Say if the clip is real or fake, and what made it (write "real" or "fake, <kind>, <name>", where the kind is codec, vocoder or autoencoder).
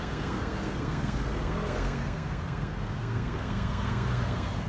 fake, codec, SNAC